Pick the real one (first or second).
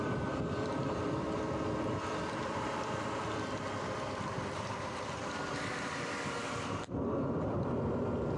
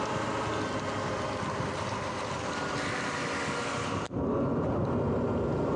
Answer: second